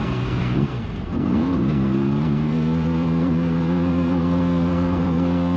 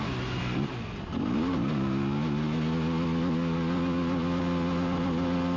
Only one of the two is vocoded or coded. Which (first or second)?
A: first